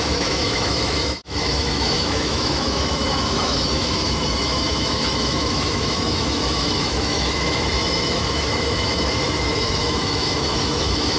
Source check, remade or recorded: remade